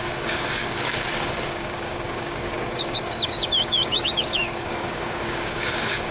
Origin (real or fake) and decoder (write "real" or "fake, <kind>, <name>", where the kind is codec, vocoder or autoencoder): fake, codec, DAC